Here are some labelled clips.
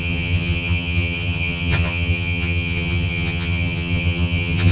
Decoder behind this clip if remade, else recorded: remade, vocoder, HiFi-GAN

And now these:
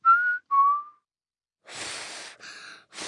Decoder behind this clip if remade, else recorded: recorded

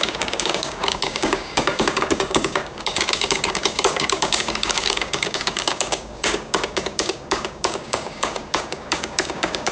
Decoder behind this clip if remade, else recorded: remade, codec, DAC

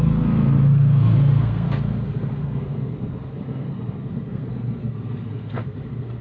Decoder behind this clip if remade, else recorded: remade, codec, SNAC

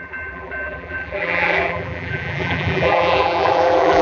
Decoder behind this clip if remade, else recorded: remade, vocoder, BigVGAN v2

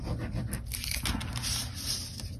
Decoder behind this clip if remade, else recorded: recorded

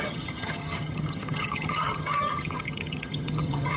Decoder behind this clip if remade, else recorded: remade, vocoder, HiFi-GAN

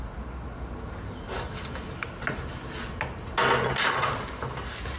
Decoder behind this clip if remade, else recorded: recorded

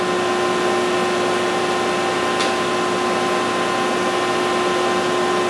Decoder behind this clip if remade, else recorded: recorded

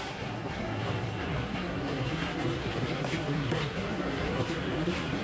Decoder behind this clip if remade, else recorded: remade, codec, SNAC